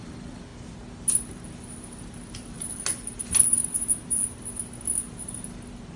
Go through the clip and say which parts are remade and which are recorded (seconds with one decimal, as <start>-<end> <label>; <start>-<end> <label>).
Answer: 0.0-6.0 recorded